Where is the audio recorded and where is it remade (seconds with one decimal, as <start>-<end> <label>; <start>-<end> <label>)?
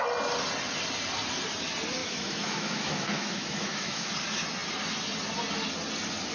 0.0-2.0 recorded; 2.0-4.1 remade; 4.1-6.3 recorded